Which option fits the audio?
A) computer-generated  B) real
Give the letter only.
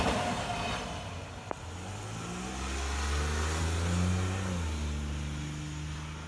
B